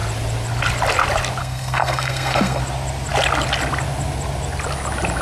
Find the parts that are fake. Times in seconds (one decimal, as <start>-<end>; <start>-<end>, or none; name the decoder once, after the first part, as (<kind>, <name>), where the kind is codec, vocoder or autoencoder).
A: 1.4-2.6 (codec, SNAC)